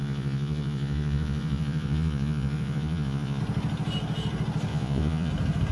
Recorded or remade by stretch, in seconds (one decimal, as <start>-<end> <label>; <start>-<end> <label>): 0.0-3.4 remade; 3.4-4.7 recorded; 4.7-5.3 remade; 5.3-5.7 recorded